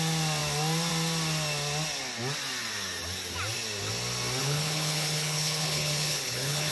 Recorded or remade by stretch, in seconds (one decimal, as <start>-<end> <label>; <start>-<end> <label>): 0.0-4.4 recorded; 4.4-6.7 remade